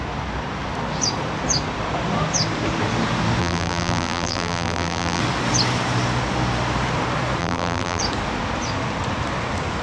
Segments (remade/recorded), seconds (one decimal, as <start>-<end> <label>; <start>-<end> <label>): 0.0-3.4 recorded; 3.4-5.2 remade; 5.2-7.4 recorded; 7.4-8.0 remade; 8.0-9.8 recorded